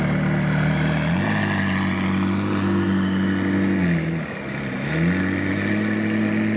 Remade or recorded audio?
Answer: recorded